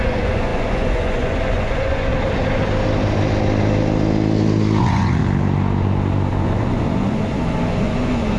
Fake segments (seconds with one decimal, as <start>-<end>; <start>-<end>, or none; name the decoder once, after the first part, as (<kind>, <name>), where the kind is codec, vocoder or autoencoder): 0.0-2.1 (vocoder, Vocos); 4.8-5.2; 6.4-8.4